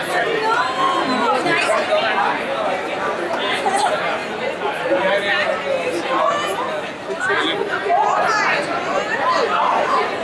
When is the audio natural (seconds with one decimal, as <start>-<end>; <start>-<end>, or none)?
0.0-10.2

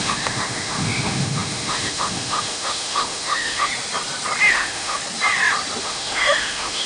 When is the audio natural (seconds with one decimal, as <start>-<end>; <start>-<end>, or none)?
3.7-4.5; 5.0-5.8

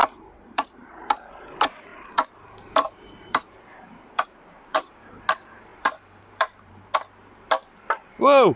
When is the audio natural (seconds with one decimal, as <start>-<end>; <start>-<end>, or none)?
1.3-1.9; 4.9-5.7; 6.8-8.6

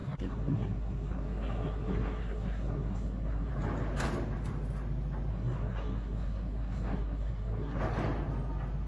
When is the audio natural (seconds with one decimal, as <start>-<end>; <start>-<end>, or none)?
3.5-5.3; 7.8-8.9

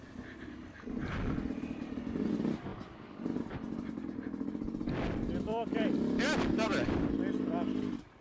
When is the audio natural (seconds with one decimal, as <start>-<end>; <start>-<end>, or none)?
0.0-1.0; 2.3-5.5; 7.1-8.2

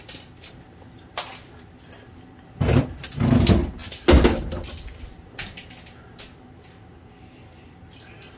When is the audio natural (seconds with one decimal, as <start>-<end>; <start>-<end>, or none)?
0.0-8.4